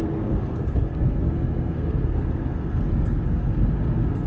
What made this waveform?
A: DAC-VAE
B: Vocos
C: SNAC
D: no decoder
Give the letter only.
C